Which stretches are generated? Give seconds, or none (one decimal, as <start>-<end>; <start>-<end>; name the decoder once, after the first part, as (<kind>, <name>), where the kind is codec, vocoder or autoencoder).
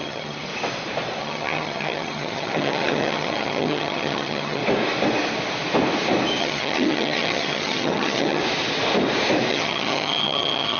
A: 0.0-0.5 (vocoder, HiFi-GAN); 1.2-4.6; 6.4-8.4; 9.5-10.8